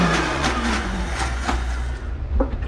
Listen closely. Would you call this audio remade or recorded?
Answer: remade